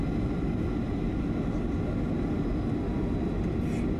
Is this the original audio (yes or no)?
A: yes